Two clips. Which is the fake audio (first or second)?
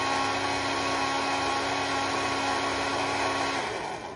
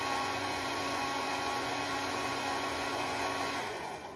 second